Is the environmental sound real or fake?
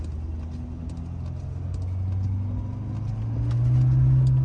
real